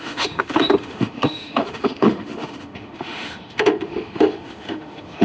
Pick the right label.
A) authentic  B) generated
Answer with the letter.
B